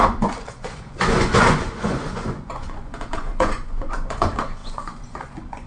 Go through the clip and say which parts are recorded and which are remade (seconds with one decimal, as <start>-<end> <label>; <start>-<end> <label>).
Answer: 0.0-5.7 remade